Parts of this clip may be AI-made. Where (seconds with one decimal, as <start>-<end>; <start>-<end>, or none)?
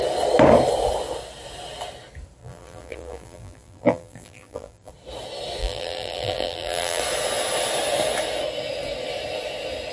2.4-4.9; 5.6-7.0